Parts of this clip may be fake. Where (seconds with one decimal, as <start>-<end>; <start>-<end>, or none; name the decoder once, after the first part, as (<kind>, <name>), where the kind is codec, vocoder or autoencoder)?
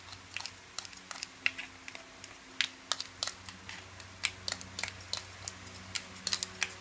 none